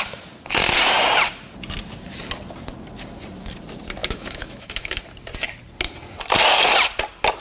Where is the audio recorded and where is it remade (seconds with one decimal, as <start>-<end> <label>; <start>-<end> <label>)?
0.0-4.0 recorded; 4.0-5.0 remade; 5.0-7.4 recorded